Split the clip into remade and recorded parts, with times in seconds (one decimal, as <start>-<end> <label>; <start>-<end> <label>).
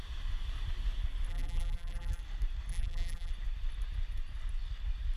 0.0-1.3 recorded; 1.3-2.2 remade; 2.2-2.7 recorded; 2.7-3.3 remade; 3.3-5.2 recorded